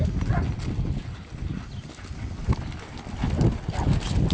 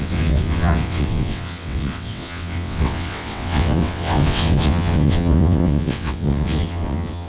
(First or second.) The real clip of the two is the first